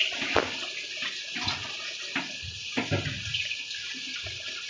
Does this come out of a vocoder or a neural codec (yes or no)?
no